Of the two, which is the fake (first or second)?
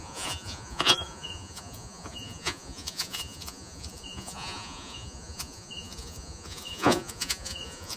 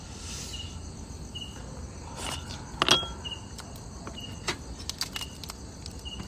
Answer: first